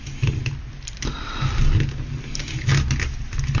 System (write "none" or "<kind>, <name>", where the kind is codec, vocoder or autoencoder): none